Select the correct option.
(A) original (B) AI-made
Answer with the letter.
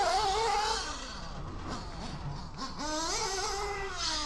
A